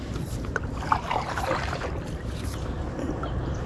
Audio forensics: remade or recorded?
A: remade